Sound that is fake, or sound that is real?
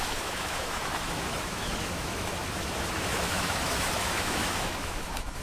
fake